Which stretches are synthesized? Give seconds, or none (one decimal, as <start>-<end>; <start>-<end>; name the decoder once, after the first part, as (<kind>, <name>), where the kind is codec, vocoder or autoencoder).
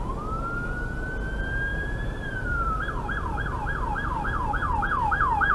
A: 1.7-2.8 (vocoder, BigVGAN v2)